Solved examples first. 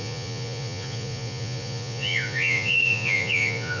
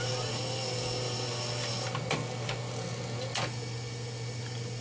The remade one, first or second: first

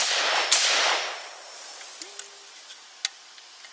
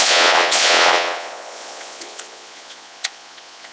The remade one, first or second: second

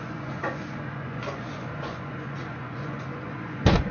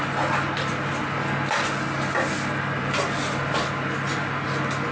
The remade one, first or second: first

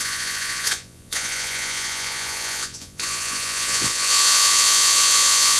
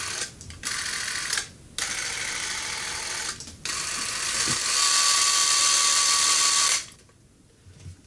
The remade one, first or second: first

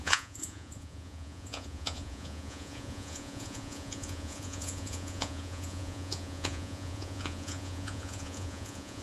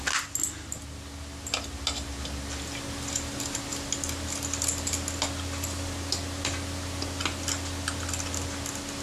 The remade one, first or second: first